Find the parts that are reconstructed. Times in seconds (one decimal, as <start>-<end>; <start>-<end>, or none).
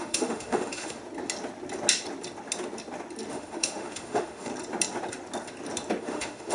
0.0-1.0; 3.3-4.5; 6.0-6.5